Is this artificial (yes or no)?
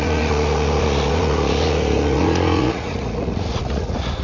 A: yes